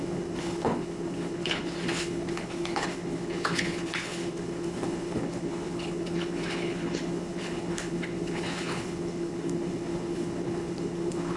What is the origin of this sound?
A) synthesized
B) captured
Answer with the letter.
A